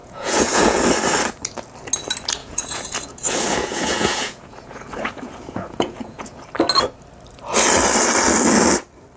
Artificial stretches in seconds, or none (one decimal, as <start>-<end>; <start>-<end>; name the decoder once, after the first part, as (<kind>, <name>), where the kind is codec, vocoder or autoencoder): 0.0-0.8 (vocoder, Vocos); 2.4-6.4